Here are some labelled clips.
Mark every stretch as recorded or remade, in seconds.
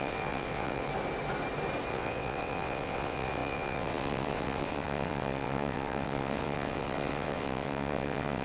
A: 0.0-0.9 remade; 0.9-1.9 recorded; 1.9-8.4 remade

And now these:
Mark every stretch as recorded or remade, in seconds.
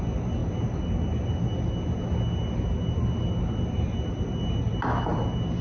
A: 0.0-5.6 recorded